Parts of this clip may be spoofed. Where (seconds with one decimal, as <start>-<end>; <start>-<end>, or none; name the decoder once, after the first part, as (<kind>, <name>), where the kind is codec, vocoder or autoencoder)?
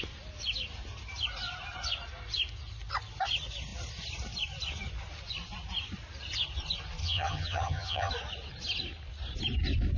7.0-8.1 (vocoder, HiFi-GAN)